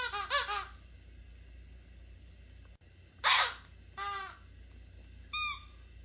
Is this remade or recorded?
recorded